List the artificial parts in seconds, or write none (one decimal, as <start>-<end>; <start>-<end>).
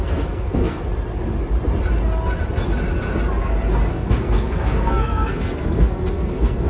0.0-0.8; 3.9-6.7